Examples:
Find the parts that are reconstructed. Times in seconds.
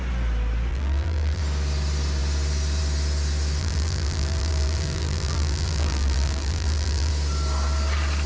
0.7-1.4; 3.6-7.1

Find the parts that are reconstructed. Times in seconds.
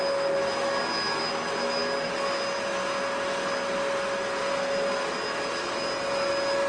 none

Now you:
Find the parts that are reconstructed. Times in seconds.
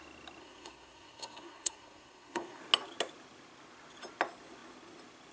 0.4-2.6